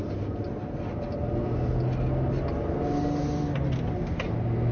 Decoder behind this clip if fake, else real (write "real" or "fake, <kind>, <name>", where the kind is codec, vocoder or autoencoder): real